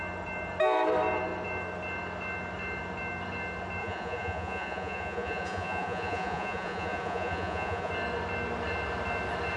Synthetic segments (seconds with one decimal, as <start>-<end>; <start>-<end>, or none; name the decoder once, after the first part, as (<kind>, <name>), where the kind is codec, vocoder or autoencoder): 3.8-7.9 (vocoder, Vocos)